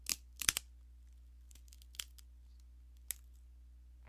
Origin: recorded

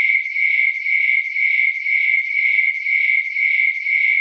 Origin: recorded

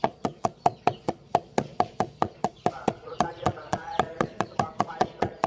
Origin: remade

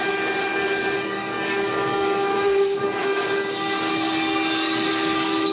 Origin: remade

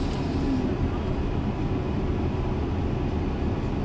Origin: recorded